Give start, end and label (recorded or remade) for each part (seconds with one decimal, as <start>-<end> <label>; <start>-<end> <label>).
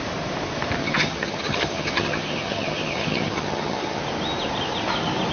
0.0-0.8 recorded; 0.8-4.0 remade; 4.0-5.3 recorded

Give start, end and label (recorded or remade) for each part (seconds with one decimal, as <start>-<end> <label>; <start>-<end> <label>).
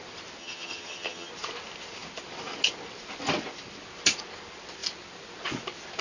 0.0-0.4 recorded; 0.4-1.3 remade; 1.3-6.0 recorded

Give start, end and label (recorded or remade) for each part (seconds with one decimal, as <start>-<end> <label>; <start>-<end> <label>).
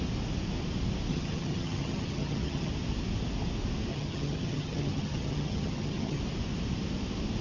0.0-1.1 recorded; 1.1-2.7 remade; 2.7-3.9 recorded; 3.9-6.2 remade; 6.2-7.4 recorded